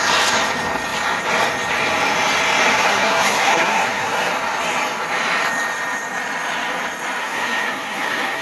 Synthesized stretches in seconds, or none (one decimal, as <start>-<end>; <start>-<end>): 2.7-4.3; 7.2-8.4

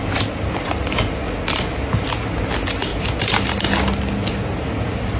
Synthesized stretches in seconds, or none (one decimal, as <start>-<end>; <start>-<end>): none